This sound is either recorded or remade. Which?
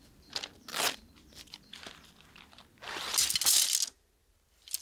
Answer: recorded